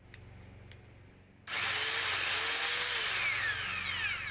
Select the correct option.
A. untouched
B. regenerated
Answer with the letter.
A